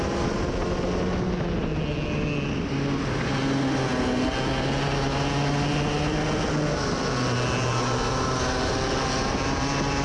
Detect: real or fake real